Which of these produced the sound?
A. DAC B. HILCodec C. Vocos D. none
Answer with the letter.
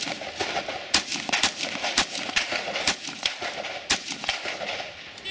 D